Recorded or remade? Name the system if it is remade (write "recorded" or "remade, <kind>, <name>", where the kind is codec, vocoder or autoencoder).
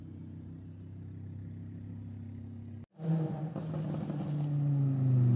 recorded